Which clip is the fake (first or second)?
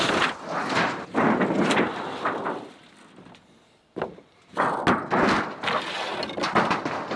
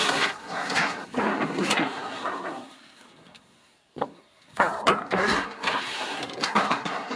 second